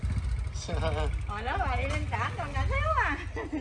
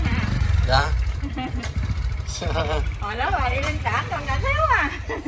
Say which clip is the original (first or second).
first